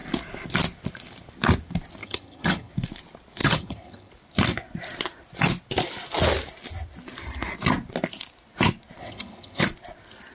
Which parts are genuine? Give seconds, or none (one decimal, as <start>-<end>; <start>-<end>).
0.0-2.0; 2.7-3.4; 4.1-9.0; 9.6-10.3